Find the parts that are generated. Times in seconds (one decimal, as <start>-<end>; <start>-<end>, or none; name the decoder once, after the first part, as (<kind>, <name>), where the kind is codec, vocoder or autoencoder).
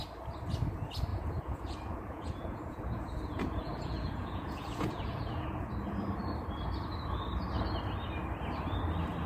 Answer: 1.1-5.7 (vocoder, Vocos)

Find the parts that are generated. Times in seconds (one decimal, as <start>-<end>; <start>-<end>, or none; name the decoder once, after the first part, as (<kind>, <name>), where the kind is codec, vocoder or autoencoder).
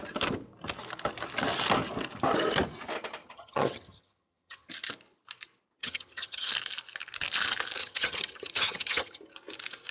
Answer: 3.2-4.7 (vocoder, HiFi-GAN); 5.8-6.5; 7.8-9.2